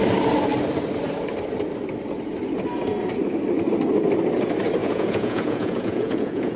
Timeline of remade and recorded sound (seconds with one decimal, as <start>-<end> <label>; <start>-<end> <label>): 0.0-4.8 recorded; 4.8-6.6 remade